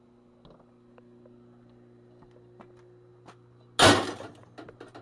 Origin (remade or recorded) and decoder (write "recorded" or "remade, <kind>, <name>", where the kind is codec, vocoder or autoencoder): recorded